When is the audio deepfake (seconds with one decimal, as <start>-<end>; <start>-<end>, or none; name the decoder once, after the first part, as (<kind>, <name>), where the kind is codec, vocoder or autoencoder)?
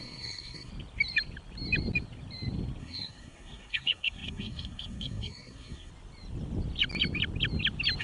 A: 0.0-0.7 (codec, SNAC); 2.8-5.9